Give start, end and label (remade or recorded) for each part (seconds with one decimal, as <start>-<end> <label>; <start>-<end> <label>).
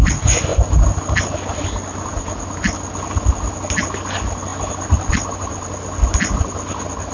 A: 0.0-7.1 recorded